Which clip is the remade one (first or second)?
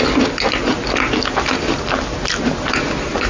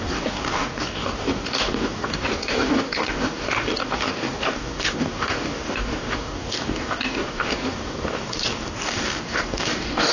second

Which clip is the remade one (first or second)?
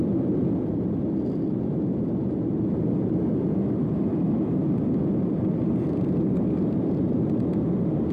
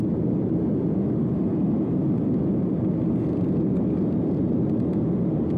first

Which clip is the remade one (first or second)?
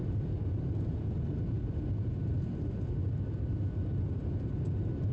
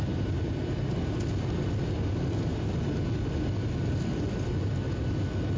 first